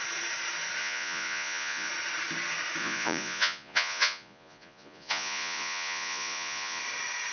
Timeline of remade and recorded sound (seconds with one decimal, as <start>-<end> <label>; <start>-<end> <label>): 0.0-0.8 recorded; 0.8-1.9 remade; 1.9-2.8 recorded; 2.8-6.8 remade; 6.8-7.3 recorded